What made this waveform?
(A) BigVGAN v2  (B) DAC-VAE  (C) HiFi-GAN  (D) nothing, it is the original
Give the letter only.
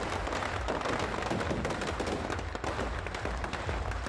D